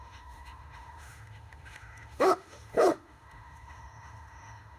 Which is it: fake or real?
fake